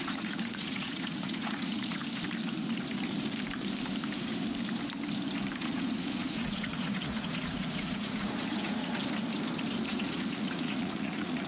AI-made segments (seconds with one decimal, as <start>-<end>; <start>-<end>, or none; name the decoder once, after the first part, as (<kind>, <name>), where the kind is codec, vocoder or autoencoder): 0.0-2.0 (vocoder, Vocos); 5.6-9.0; 9.9-11.5